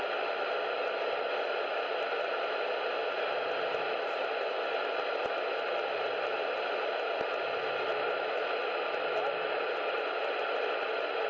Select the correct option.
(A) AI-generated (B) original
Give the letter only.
B